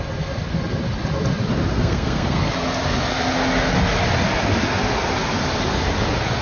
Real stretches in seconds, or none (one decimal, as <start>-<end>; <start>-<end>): 0.0-1.7; 2.5-6.4